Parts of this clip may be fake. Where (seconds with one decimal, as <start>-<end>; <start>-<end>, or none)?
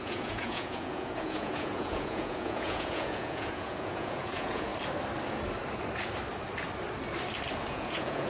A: 0.0-4.7; 7.7-8.3